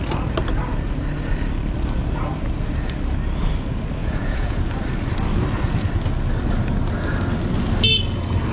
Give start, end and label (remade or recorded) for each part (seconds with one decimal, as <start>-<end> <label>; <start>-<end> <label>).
0.0-4.0 recorded; 4.0-4.6 remade; 4.6-8.5 recorded